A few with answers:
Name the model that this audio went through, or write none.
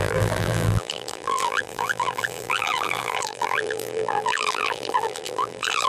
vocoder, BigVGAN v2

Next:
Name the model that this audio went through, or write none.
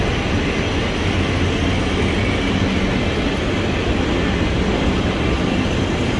none